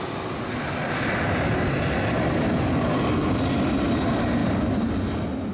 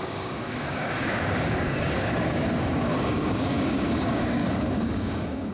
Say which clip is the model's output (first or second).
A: second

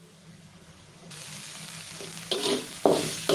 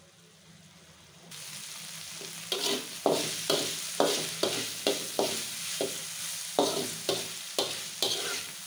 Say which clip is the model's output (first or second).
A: first